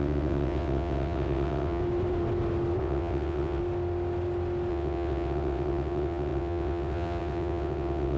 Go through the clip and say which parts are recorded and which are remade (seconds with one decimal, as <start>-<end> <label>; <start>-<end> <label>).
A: 0.0-1.8 remade; 1.8-2.8 recorded; 2.8-3.6 remade; 3.6-4.7 recorded; 4.7-8.2 remade